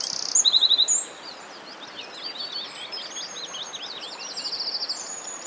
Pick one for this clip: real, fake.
real